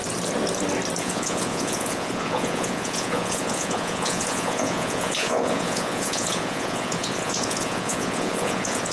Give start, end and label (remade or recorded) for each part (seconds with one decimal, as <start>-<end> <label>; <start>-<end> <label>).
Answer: 0.0-1.0 recorded; 1.0-8.9 remade